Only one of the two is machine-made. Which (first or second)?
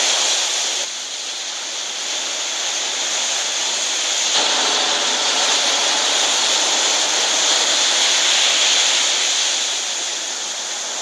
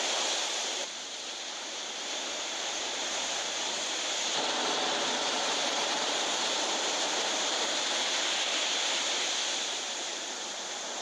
second